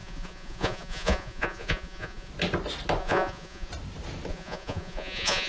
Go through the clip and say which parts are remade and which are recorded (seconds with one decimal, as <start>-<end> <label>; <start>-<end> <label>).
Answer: 0.0-2.3 remade; 2.3-3.0 recorded; 3.0-3.7 remade; 3.7-4.3 recorded; 4.3-5.5 remade